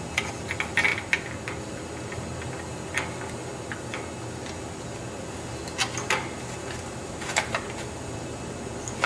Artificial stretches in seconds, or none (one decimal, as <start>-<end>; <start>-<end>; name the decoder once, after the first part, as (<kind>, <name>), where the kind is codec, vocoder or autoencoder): none